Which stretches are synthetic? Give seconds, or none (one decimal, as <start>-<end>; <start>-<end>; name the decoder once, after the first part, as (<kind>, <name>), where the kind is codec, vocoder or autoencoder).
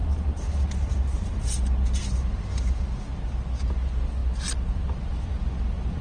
none